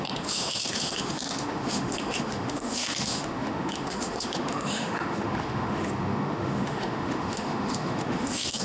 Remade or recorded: remade